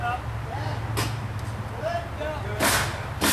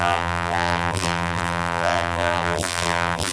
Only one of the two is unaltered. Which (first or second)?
first